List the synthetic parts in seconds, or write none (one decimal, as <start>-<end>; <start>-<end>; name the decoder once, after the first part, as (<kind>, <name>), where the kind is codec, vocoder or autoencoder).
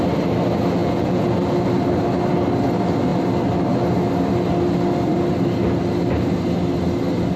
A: 0.8-1.3 (vocoder, Vocos)